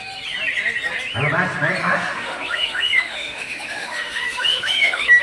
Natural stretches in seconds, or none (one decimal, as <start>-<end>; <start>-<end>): 0.0-1.8